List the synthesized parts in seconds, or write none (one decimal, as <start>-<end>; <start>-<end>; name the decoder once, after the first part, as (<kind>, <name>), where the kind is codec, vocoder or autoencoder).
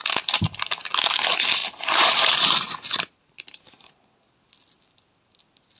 none